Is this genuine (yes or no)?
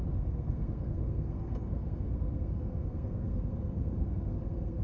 no